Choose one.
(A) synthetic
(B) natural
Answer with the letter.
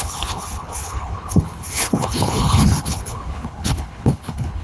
A